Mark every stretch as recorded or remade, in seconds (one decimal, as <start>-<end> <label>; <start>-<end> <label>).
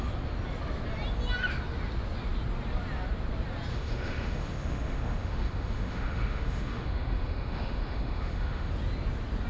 0.0-3.7 recorded; 3.7-8.7 remade; 8.7-9.5 recorded